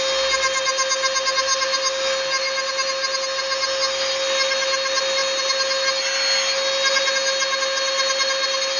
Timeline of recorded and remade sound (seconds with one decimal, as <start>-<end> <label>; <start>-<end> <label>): 0.0-8.8 recorded

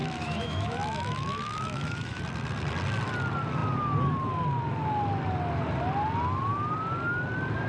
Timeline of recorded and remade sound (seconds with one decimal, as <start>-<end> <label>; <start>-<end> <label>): 0.0-2.2 remade; 2.2-7.7 recorded

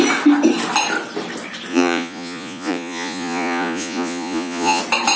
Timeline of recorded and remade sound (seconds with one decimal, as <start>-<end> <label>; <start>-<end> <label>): 0.0-1.7 recorded; 1.7-4.8 remade; 4.8-5.2 recorded